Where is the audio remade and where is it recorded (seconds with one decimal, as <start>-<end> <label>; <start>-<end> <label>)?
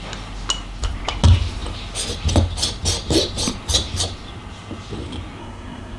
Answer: 0.0-5.4 recorded; 5.4-6.0 remade